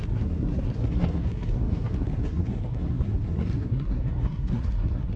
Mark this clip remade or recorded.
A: remade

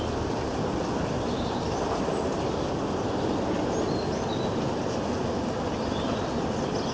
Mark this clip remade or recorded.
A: recorded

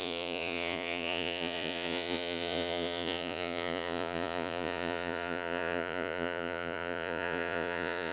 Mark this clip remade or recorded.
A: remade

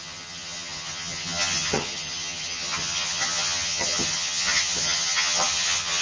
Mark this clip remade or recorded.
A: remade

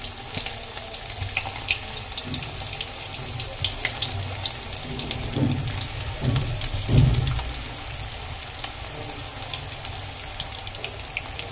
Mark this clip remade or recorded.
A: recorded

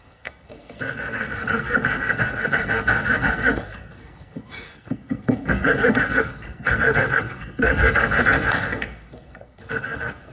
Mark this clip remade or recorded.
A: remade